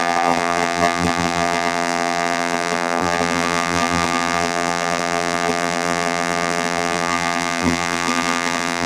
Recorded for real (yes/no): no